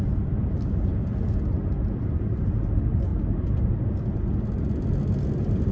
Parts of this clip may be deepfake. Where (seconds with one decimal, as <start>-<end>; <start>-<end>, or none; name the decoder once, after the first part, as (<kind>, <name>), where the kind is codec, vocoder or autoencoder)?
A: none